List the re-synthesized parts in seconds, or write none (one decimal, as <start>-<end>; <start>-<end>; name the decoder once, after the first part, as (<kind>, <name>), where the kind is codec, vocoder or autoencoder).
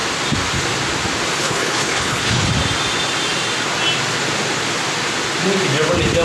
1.4-2.5 (codec, HILCodec)